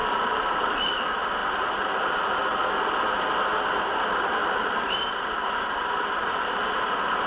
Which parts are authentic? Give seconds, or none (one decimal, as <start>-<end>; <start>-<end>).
1.0-1.4; 2.2-4.4; 6.8-7.3